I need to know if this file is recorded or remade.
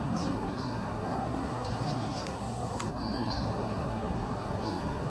remade